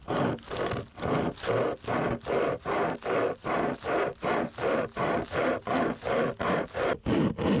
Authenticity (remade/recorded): recorded